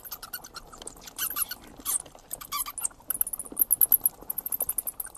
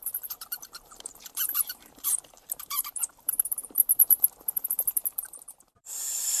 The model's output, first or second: second